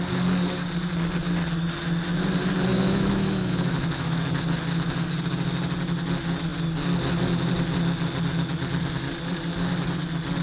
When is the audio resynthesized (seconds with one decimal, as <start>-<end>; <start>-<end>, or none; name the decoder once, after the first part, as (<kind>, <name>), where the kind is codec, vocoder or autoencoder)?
2.7-4.3 (autoencoder, DAC-VAE)